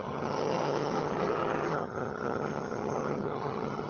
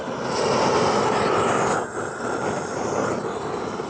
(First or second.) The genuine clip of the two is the second